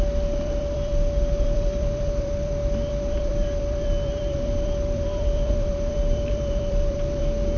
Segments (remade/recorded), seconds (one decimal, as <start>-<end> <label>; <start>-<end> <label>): 0.0-7.6 remade